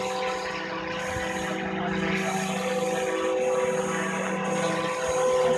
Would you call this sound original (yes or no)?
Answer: yes